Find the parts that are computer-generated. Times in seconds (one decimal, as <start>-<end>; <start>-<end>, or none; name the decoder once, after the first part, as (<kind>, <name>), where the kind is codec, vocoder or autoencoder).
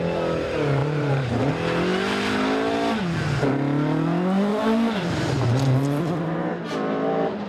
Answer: 0.8-1.5 (vocoder, BigVGAN v2); 4.5-6.0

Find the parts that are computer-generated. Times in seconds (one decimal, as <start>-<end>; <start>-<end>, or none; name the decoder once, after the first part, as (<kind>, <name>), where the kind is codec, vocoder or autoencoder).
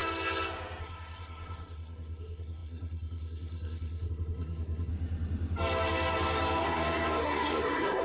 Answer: 0.8-4.9 (codec, SNAC); 6.6-8.0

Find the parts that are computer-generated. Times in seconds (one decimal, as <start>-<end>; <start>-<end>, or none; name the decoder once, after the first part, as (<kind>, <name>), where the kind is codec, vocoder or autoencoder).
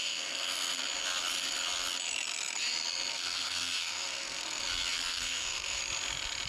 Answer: 0.0-0.8 (codec, SNAC); 3.1-4.6; 5.1-5.8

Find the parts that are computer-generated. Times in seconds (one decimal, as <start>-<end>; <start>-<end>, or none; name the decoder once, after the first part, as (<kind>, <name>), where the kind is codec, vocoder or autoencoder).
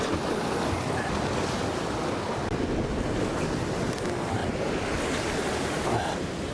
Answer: 4.4-6.5 (vocoder, BigVGAN v2)